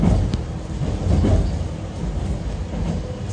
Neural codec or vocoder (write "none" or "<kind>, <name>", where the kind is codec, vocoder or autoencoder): none